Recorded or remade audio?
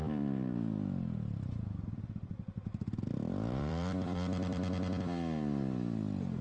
remade